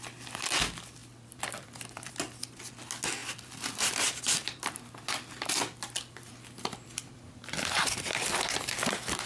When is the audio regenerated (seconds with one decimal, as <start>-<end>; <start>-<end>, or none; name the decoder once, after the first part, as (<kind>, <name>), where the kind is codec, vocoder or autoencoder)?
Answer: 1.0-2.1 (vocoder, BigVGAN v2); 3.2-7.1